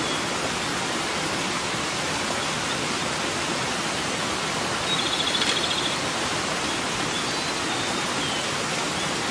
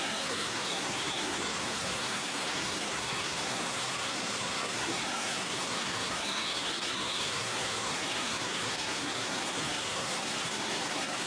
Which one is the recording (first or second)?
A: first